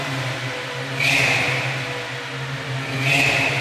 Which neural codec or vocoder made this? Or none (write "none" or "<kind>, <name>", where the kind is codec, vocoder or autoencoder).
none